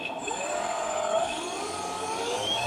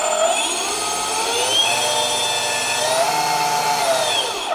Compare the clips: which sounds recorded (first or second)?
second